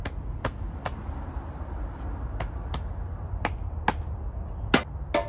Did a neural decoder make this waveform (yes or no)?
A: no